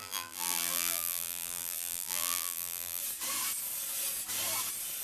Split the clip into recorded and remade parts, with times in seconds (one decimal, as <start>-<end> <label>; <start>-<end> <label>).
0.0-3.0 remade; 3.0-5.0 recorded